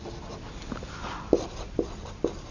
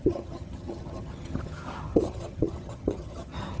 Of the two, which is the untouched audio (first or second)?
first